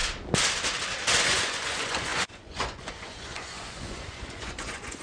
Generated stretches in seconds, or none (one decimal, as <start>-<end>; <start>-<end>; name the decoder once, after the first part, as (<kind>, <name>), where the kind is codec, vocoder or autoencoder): 1.2-5.0 (vocoder, Vocos)